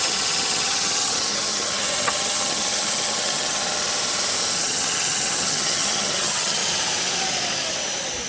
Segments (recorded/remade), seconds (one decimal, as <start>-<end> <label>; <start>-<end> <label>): 0.0-3.6 remade; 3.6-4.6 recorded; 4.6-6.6 remade; 6.6-8.3 recorded